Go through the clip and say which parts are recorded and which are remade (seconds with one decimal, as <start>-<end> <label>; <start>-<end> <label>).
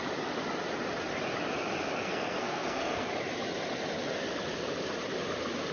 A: 0.0-2.0 recorded; 2.0-3.1 remade; 3.1-5.7 recorded